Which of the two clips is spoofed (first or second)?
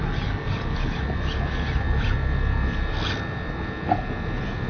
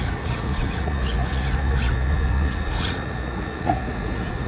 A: second